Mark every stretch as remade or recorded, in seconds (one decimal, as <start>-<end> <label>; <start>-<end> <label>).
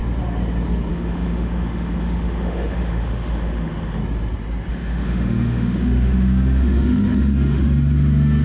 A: 0.0-0.9 recorded; 0.9-4.0 remade; 4.0-4.7 recorded; 4.7-8.4 remade